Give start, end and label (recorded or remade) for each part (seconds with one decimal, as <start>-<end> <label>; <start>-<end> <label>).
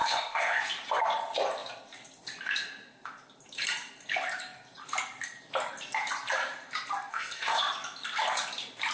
0.0-0.6 remade; 0.6-7.1 recorded; 7.1-7.6 remade; 7.6-8.9 recorded